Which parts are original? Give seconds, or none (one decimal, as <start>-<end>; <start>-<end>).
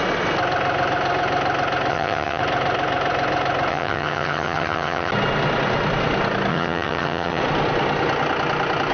0.0-1.9; 2.4-3.7; 5.1-6.5; 7.4-8.9